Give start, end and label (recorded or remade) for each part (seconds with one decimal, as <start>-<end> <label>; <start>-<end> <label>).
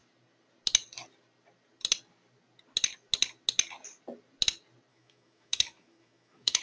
0.0-4.9 recorded; 4.9-6.6 remade